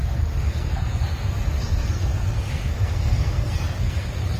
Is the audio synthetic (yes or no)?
yes